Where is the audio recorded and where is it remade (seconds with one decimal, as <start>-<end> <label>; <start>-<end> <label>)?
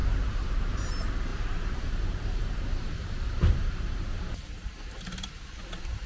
0.0-0.7 remade; 0.7-1.3 recorded; 1.3-5.0 remade; 5.0-6.1 recorded